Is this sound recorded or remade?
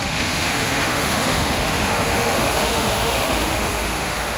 remade